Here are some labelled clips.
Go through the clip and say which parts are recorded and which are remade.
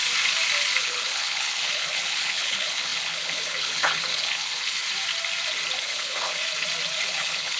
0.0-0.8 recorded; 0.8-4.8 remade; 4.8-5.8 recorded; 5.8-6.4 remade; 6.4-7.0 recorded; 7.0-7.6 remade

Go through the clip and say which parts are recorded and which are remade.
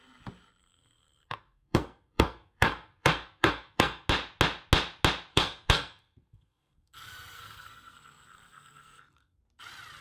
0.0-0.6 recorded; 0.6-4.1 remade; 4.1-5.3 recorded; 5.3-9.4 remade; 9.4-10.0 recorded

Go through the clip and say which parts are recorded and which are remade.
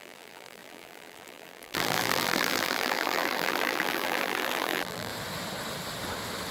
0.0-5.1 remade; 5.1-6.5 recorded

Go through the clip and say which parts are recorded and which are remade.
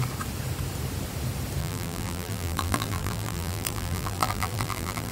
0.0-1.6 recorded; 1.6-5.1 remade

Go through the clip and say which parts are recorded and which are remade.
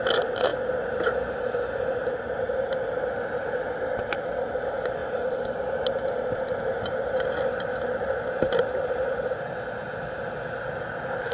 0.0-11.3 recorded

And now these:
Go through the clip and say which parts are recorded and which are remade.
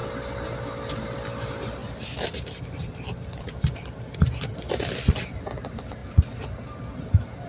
0.0-1.8 recorded; 1.8-5.1 remade; 5.1-7.5 recorded